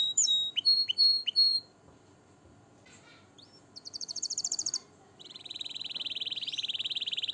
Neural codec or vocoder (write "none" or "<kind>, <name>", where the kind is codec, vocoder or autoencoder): vocoder, BigVGAN v2